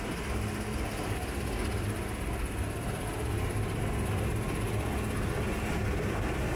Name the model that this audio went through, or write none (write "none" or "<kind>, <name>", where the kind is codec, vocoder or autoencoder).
none